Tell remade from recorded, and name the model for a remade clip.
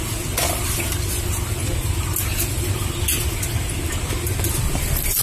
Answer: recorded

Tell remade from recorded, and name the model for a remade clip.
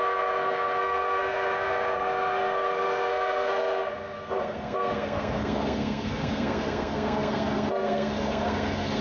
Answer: remade, codec, SNAC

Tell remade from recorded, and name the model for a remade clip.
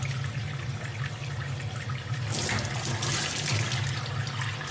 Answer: recorded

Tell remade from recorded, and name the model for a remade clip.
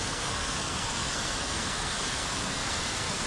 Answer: remade, codec, SNAC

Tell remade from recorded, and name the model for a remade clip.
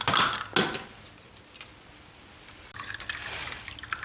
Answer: recorded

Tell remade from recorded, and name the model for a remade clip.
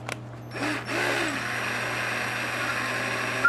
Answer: recorded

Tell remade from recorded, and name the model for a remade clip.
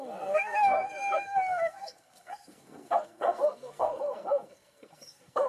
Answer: remade, codec, SNAC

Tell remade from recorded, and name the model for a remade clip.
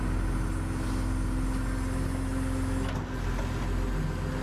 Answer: recorded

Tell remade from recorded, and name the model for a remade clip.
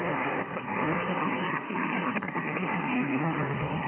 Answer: remade, codec, SNAC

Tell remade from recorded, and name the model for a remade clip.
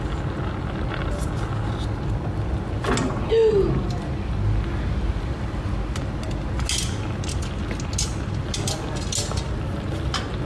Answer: recorded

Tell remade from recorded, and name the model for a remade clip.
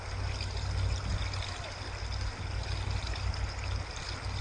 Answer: recorded